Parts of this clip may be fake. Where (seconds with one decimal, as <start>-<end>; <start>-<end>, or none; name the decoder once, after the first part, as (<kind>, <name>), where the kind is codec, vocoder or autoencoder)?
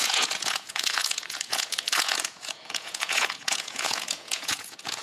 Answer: 0.0-5.0 (vocoder, Vocos)